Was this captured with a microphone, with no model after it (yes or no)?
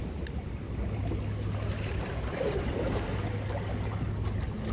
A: yes